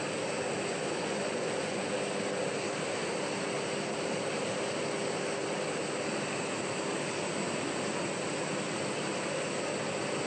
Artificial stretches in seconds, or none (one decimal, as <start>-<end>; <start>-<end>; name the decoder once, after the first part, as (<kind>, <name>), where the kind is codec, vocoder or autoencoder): 0.7-1.9 (vocoder, Vocos)